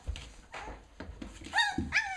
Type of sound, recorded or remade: recorded